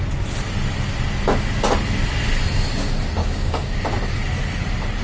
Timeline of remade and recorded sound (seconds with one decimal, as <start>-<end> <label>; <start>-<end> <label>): 0.0-3.2 recorded; 3.2-3.8 remade; 3.8-5.0 recorded